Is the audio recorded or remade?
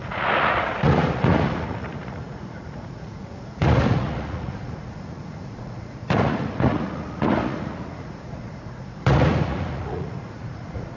remade